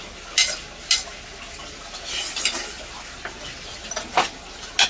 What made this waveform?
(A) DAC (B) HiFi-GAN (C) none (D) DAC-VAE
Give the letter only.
C